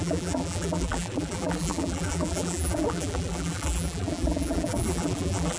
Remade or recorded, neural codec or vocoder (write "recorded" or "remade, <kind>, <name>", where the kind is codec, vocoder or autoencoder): remade, vocoder, BigVGAN v2